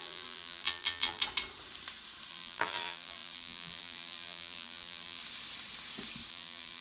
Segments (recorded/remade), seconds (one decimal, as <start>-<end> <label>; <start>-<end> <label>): 0.0-1.2 remade; 1.2-2.3 recorded; 2.3-5.2 remade; 5.2-6.3 recorded; 6.3-6.8 remade